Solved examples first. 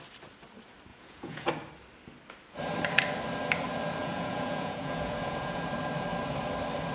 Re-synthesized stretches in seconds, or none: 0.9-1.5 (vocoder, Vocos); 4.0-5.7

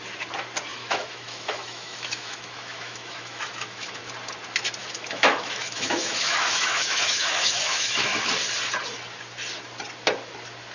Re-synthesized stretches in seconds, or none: 0.7-4.0 (autoencoder, DAC-VAE); 4.8-8.3

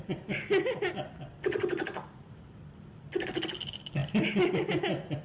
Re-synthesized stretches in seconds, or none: none

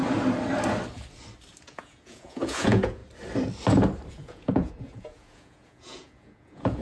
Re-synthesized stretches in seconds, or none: 1.6-3.0 (vocoder, Vocos); 4.1-6.8

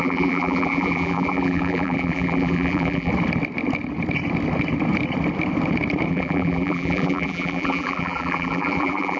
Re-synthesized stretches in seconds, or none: 0.0-3.1 (vocoder, BigVGAN v2); 6.1-9.2

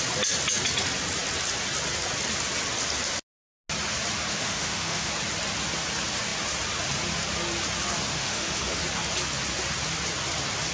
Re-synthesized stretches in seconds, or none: 4.3-5.1 (autoencoder, DAC-VAE); 8.1-8.8

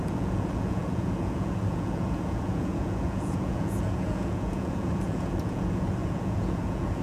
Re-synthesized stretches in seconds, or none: 0.0-7.0 (vocoder, Vocos)

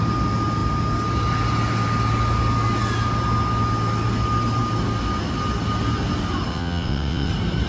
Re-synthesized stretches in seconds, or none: 6.5-7.3 (vocoder, WaveNeXt)